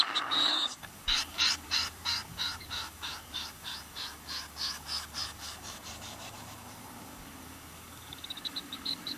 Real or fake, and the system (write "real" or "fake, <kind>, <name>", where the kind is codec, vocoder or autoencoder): fake, codec, DAC